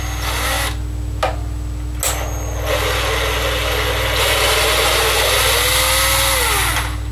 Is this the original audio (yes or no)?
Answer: yes